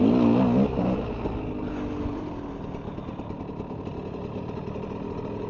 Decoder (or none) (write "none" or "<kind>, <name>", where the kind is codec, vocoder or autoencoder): none